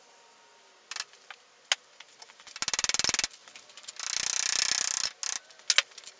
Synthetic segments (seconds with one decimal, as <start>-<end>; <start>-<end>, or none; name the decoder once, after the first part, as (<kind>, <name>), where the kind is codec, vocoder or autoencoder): none